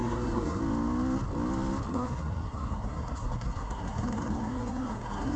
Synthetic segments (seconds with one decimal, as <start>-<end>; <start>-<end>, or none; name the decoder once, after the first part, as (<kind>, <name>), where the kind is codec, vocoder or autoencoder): 0.0-0.6 (codec, SNAC); 1.9-5.4